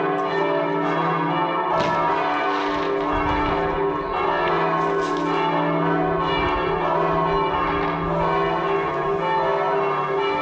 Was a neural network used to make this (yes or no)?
no